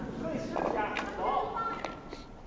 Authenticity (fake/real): real